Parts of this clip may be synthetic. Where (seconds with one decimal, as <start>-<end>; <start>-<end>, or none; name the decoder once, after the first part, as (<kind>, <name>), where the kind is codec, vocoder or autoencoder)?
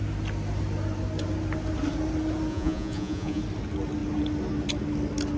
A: 2.5-3.4 (vocoder, Vocos)